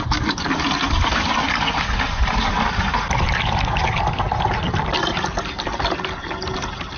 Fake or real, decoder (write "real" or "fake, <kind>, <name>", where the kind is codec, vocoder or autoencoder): real